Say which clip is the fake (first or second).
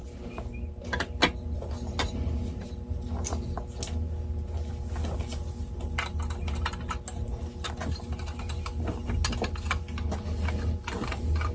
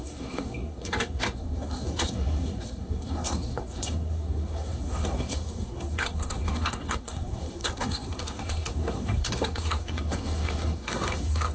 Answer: second